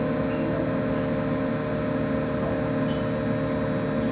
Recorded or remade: recorded